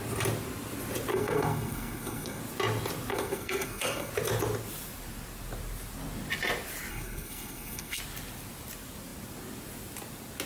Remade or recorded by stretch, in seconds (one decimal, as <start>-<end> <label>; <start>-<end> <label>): 0.0-1.1 recorded; 1.1-2.4 remade; 2.4-3.1 recorded; 3.1-4.1 remade; 4.1-6.9 recorded; 6.9-8.0 remade; 8.0-10.5 recorded